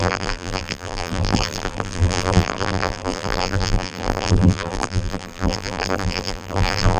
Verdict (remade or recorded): remade